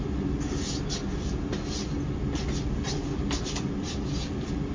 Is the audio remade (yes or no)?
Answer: no